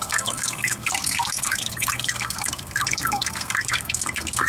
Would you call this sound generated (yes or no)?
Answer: yes